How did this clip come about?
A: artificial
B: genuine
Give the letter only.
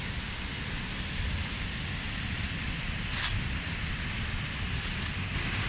B